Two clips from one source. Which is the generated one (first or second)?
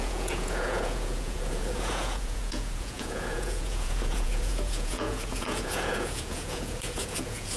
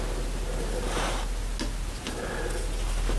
first